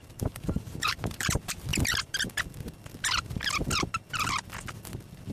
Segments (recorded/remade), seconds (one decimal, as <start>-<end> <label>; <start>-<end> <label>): 0.0-1.7 remade; 1.7-5.3 recorded